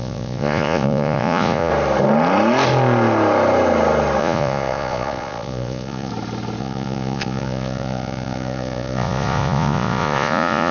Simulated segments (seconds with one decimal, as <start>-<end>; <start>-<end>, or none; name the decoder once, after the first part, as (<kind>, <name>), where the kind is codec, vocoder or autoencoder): 0.0-1.7 (vocoder, Vocos); 4.2-6.1; 6.6-10.7

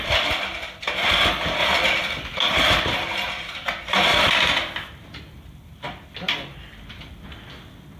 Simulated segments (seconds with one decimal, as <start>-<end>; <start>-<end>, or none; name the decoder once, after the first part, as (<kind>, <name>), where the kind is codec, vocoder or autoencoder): none

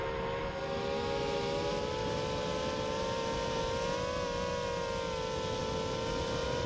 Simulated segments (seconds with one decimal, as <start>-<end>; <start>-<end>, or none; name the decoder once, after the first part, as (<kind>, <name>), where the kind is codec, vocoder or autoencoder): none

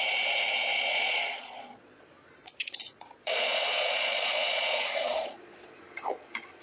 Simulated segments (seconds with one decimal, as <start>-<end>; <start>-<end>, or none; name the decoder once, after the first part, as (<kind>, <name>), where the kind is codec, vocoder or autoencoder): 0.7-2.0 (vocoder, Vocos); 2.4-5.8

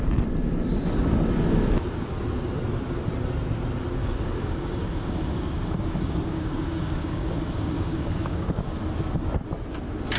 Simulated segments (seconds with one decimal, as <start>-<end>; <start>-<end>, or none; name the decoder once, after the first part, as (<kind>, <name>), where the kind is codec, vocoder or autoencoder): 4.0-8.8 (codec, DAC)

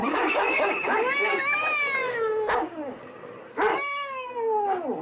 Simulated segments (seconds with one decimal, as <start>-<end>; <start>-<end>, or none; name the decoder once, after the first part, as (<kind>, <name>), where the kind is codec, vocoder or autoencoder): 0.0-3.0 (codec, DAC); 3.7-4.3